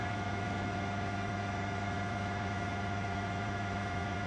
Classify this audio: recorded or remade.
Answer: remade